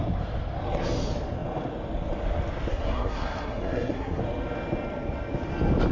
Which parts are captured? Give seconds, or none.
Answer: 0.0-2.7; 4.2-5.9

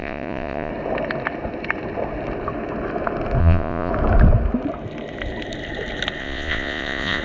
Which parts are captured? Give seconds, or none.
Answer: 0.7-3.4; 3.9-6.2

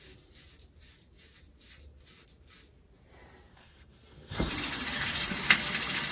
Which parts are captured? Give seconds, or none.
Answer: 0.0-3.5; 4.5-6.1

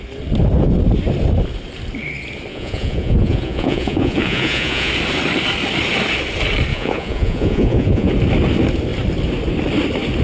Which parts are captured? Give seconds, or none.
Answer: 0.0-2.5; 4.9-6.7; 8.1-10.2

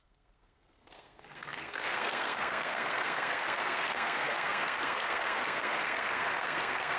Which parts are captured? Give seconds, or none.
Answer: none